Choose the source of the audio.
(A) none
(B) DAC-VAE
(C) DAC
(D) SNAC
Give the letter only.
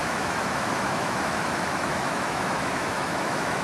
B